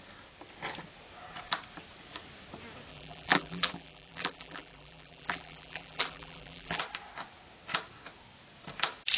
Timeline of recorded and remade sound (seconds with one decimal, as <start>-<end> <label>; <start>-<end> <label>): 0.0-2.9 recorded; 2.9-6.8 remade; 6.8-9.2 recorded